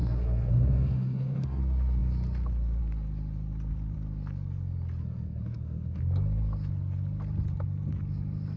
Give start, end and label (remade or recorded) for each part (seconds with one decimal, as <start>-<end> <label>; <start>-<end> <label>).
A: 0.0-1.6 remade; 1.6-5.0 recorded; 5.0-6.0 remade; 6.0-8.6 recorded